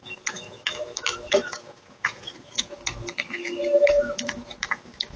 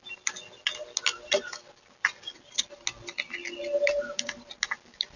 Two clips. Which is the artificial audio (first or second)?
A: first